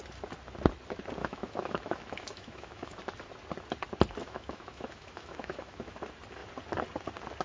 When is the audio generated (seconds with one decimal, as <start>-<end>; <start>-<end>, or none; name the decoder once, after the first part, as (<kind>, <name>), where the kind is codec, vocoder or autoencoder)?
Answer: 1.2-3.0 (autoencoder, DAC-VAE); 4.2-6.0